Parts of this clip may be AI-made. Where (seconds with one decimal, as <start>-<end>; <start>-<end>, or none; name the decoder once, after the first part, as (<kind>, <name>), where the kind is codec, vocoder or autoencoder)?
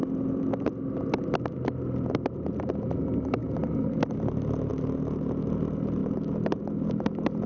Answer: none